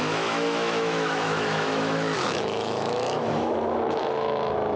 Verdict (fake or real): fake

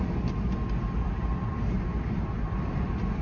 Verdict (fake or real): real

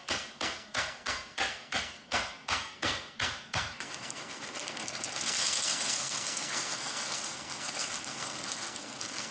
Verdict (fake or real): fake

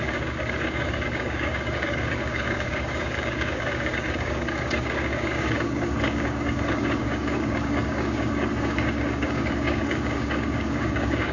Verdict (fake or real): fake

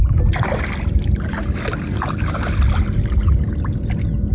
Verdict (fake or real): real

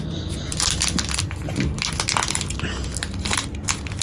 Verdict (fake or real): real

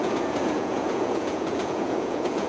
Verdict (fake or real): fake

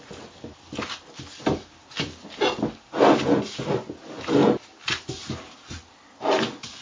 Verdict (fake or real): real